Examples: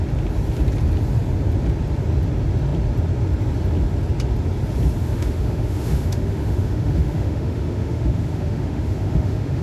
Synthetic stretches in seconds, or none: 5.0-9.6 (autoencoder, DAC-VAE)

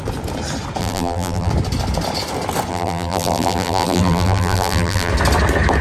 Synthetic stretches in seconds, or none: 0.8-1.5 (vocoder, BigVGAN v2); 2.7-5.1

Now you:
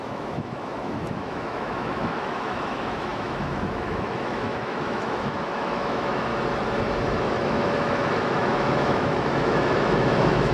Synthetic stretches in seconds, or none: 0.0-6.3 (autoencoder, DAC-VAE); 7.2-10.5

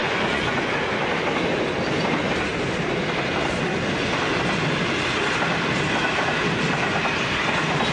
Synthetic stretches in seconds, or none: 0.0-0.7 (vocoder, Vocos)

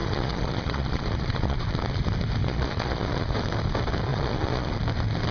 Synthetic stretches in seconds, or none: 0.0-1.7 (vocoder, Vocos); 2.4-3.3; 4.1-4.7

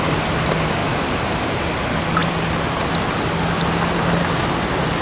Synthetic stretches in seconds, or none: 0.8-1.7 (vocoder, BigVGAN v2)

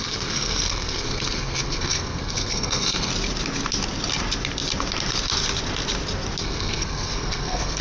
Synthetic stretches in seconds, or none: 0.0-3.1 (codec, SNAC); 6.4-7.8